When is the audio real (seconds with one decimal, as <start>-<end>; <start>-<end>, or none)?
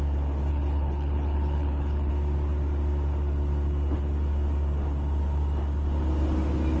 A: 0.0-0.5; 2.1-6.8